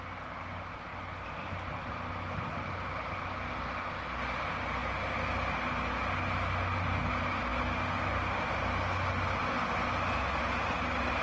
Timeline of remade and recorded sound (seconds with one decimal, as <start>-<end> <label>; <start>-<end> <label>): 0.0-11.2 recorded